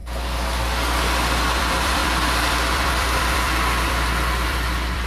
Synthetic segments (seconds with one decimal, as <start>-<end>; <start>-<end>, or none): 1.6-5.1

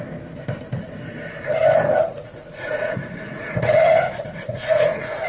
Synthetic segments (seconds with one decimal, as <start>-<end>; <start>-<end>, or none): 2.0-5.3